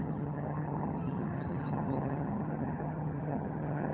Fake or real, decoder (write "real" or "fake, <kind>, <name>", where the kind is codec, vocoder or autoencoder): fake, vocoder, HiFi-GAN